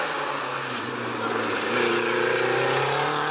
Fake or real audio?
real